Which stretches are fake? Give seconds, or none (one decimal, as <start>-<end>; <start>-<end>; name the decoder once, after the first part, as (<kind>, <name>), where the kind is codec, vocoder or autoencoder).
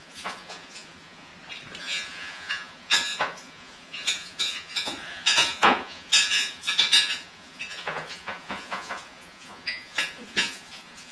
0.0-1.3 (vocoder, Vocos); 1.8-11.1